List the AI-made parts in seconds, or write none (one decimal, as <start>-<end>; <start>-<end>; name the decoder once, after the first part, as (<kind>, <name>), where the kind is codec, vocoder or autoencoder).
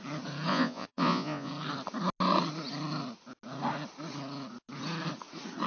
0.5-1.5 (vocoder, Vocos)